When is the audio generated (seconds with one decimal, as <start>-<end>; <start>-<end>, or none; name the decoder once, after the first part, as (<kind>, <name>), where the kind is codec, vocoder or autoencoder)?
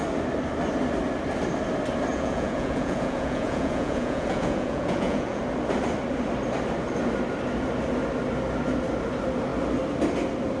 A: 2.1-5.4 (vocoder, Vocos)